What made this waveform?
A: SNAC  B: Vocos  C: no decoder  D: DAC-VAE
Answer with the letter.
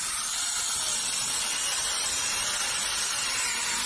C